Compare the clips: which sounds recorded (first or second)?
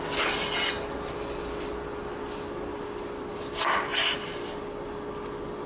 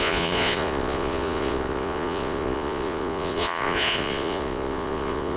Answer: first